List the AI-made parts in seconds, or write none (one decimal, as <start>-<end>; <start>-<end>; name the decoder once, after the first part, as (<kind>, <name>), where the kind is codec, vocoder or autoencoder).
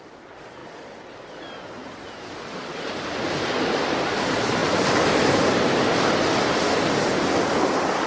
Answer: none